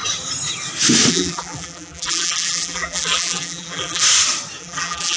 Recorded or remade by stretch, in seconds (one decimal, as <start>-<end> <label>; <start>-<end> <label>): 0.0-1.1 recorded; 1.1-4.0 remade; 4.0-4.6 recorded; 4.6-5.2 remade